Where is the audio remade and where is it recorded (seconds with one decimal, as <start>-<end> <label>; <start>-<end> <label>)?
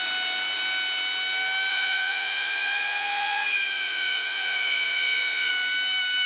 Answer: 0.0-1.7 recorded; 1.7-5.5 remade; 5.5-6.3 recorded